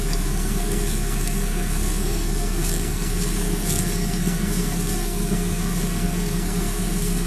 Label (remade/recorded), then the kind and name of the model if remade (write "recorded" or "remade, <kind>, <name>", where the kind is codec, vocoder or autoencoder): remade, codec, SNAC